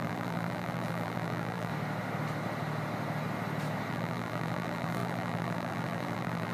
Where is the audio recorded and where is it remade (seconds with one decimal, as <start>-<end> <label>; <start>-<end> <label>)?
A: 0.0-1.7 remade; 1.7-3.9 recorded; 3.9-6.5 remade